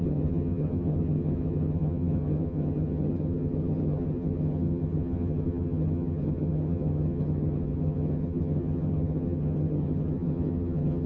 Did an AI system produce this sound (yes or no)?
yes